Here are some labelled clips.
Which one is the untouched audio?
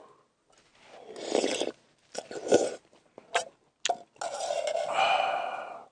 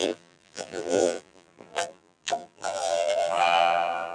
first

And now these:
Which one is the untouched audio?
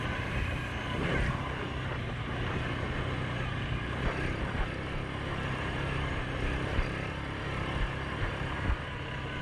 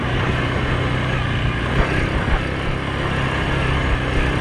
second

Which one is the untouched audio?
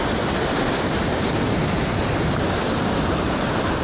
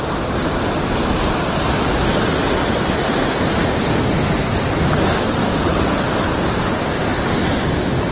second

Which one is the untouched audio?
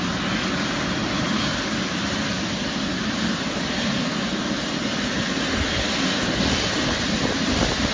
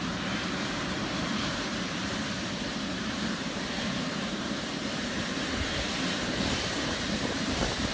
first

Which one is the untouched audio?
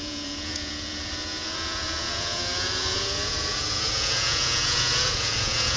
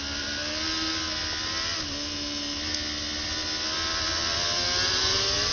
second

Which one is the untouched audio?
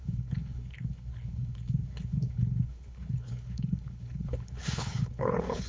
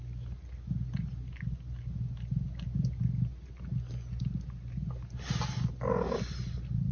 second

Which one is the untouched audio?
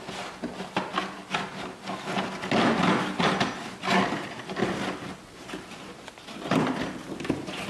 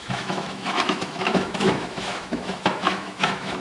first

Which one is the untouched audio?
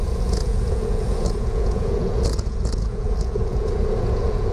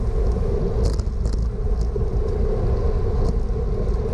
second